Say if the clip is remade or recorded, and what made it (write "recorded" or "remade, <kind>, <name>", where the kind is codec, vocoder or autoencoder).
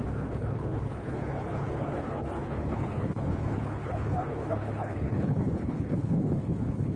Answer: remade, codec, HILCodec